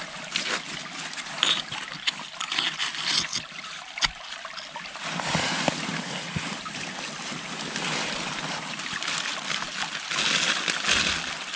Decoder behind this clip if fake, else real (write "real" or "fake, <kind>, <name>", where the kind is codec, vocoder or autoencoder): real